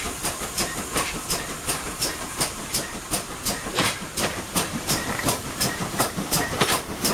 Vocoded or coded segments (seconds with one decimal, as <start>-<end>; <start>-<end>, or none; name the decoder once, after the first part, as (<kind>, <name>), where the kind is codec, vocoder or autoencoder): 0.0-2.7 (vocoder, BigVGAN v2); 3.7-7.1